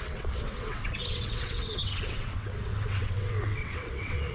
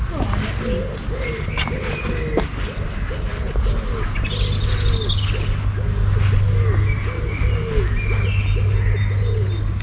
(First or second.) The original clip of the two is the second